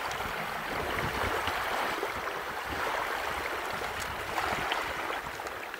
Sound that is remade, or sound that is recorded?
recorded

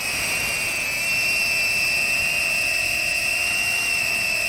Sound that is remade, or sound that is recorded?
remade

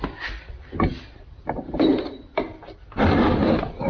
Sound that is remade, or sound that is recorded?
remade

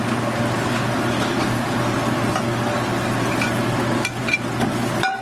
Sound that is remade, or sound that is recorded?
recorded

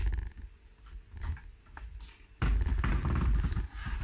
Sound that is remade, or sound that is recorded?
recorded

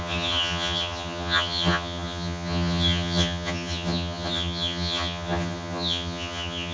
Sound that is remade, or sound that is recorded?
remade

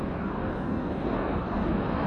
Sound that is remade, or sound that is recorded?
remade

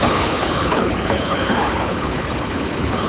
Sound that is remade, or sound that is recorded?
remade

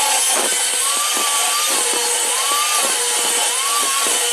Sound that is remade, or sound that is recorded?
recorded